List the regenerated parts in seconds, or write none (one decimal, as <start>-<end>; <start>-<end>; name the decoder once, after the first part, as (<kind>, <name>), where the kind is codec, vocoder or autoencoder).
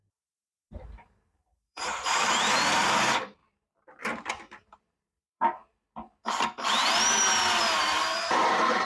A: 0.0-3.4 (vocoder, BigVGAN v2); 4.3-5.6; 7.6-8.8